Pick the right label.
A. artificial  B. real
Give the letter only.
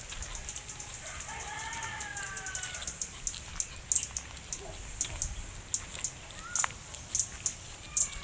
B